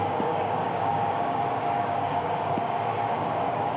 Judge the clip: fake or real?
fake